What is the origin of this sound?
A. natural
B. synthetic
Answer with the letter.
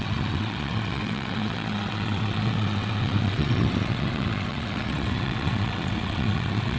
B